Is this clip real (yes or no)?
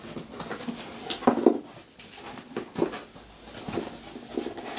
yes